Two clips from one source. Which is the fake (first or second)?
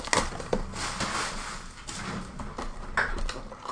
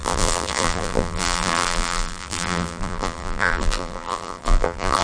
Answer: second